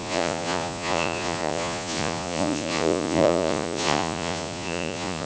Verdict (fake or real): fake